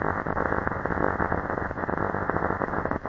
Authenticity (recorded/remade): remade